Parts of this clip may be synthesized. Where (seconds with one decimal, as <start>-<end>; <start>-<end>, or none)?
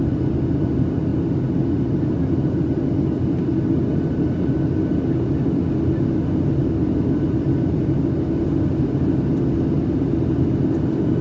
none